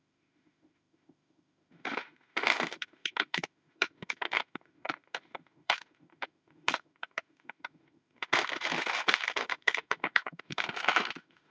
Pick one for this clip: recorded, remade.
remade